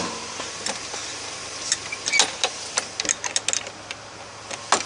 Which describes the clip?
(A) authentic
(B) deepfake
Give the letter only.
A